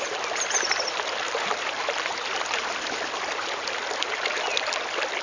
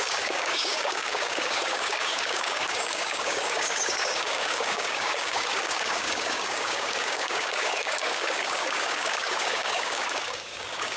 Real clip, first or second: first